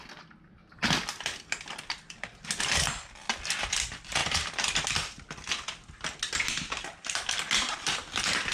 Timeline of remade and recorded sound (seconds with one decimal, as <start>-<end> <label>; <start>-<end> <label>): 0.0-8.5 recorded